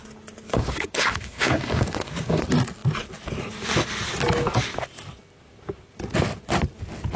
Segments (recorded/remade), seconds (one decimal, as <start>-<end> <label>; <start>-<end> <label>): 0.0-0.4 recorded; 0.4-2.4 remade; 2.4-7.2 recorded